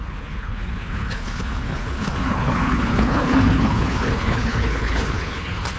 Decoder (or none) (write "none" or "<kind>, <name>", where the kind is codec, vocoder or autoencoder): codec, HILCodec